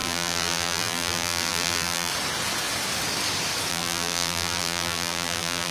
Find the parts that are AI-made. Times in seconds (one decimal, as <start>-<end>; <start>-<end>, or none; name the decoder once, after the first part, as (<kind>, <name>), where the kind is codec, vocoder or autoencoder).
0.0-2.1 (vocoder, BigVGAN v2); 3.7-5.7